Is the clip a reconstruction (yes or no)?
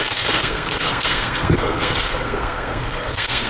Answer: yes